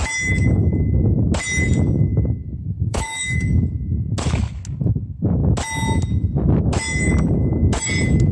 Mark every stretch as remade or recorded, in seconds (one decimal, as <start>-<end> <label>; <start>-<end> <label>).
0.0-2.1 recorded; 2.1-3.6 remade; 3.6-8.3 recorded